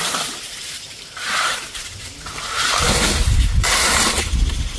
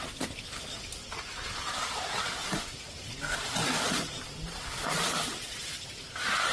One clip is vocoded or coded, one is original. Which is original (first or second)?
second